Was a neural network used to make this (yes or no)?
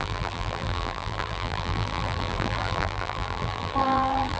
yes